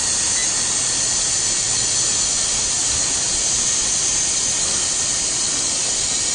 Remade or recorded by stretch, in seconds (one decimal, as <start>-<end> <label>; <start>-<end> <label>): 0.0-6.3 recorded